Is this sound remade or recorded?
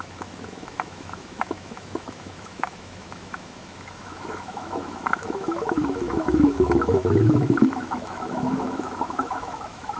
remade